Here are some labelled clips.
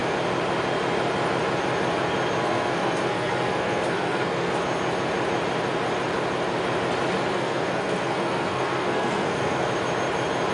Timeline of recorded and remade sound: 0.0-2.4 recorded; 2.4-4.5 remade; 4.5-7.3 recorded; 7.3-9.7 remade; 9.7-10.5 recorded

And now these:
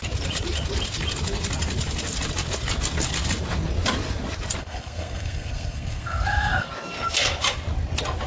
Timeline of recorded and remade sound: 0.0-4.6 recorded; 4.6-6.7 remade; 6.7-8.3 recorded

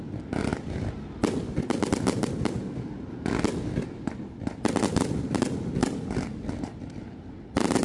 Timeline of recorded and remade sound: 0.0-7.8 recorded

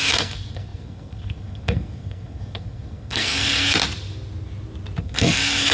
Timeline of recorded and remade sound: 0.0-3.8 remade; 3.8-5.0 recorded; 5.0-5.7 remade

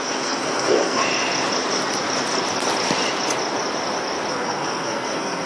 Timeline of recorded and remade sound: 0.0-1.0 remade; 1.0-4.3 recorded; 4.3-5.5 remade

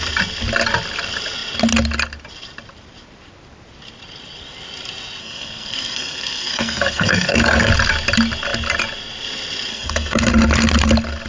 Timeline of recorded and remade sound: 0.0-5.2 recorded; 5.2-7.7 remade; 7.7-9.7 recorded; 9.7-10.3 remade; 10.3-11.3 recorded

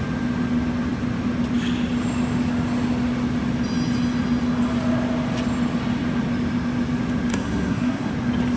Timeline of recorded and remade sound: 0.0-7.3 recorded; 7.3-8.1 remade; 8.1-8.6 recorded